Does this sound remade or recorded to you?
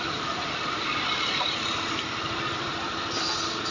remade